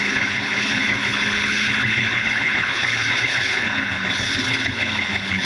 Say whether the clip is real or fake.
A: fake